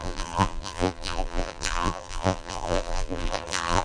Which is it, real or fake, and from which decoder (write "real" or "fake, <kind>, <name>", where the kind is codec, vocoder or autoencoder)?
fake, vocoder, BigVGAN v2